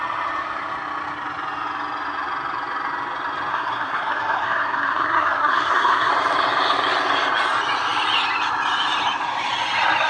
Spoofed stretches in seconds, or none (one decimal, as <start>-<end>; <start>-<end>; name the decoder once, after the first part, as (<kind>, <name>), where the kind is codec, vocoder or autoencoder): 3.5-6.1 (codec, SNAC)